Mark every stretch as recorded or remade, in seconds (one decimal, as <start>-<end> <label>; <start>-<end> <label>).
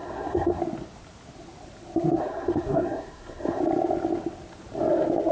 0.0-0.6 remade; 0.6-2.2 recorded; 2.2-3.6 remade; 3.6-5.3 recorded